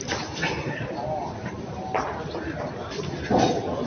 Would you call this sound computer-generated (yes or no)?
no